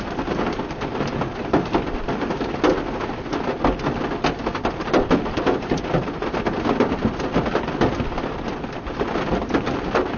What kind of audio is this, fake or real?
real